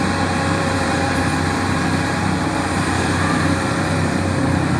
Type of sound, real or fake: fake